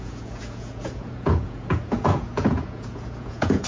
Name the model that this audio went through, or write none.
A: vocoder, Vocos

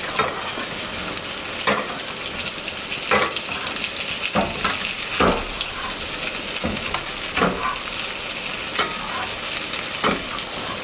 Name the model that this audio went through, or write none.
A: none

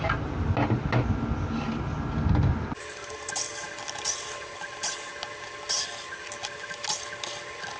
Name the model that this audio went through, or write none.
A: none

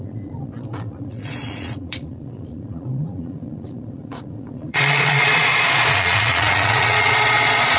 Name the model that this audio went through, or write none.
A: vocoder, Vocos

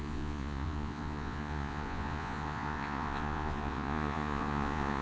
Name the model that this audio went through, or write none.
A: vocoder, Vocos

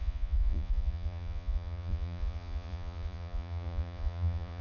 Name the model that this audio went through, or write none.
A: vocoder, Vocos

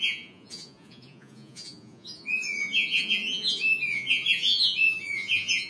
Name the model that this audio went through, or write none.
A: vocoder, Vocos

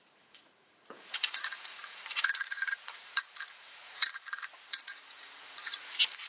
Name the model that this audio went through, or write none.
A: vocoder, Vocos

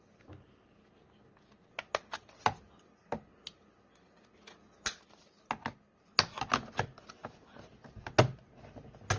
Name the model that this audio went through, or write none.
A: none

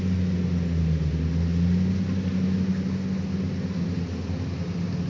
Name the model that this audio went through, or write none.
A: none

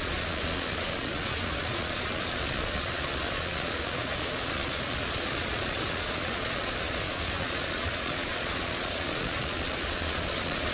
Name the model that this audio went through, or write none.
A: vocoder, Vocos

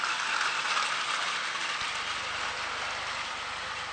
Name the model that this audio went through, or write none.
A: none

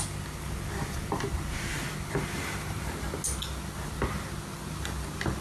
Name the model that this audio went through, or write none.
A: none